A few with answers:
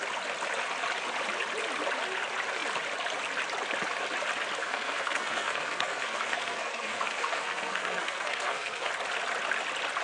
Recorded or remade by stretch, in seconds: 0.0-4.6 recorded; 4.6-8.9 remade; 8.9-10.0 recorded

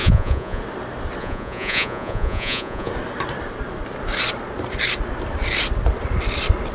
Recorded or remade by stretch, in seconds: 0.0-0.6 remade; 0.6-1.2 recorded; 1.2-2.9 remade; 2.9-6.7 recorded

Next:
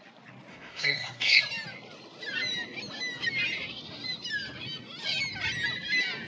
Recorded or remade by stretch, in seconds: 0.0-0.5 recorded; 0.5-1.4 remade; 1.4-6.3 recorded

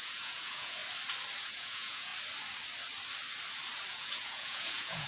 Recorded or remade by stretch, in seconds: 0.0-0.8 remade; 0.8-1.4 recorded; 1.4-2.1 remade; 2.1-3.9 recorded; 3.9-5.1 remade